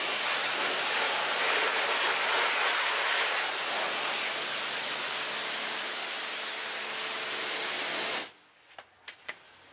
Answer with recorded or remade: recorded